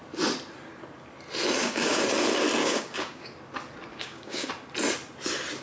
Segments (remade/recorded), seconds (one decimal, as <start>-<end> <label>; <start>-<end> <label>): 0.0-1.6 recorded; 1.6-2.1 remade; 2.1-2.6 recorded; 2.6-3.3 remade; 3.3-3.9 recorded; 3.9-4.5 remade; 4.5-5.6 recorded